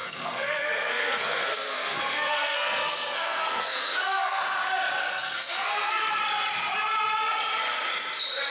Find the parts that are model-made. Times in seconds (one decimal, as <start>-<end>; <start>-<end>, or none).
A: 0.0-4.4; 5.0-6.2